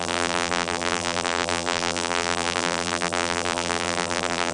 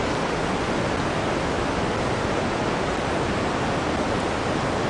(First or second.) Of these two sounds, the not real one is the first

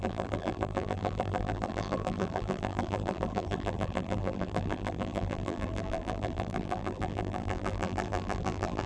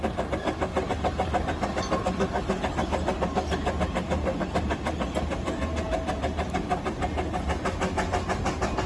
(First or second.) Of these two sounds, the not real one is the first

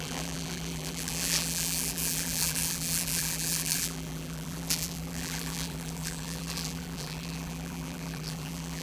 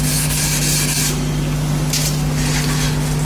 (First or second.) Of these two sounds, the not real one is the first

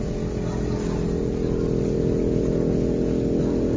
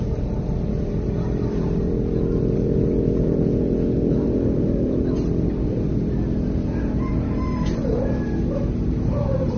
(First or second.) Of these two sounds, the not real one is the second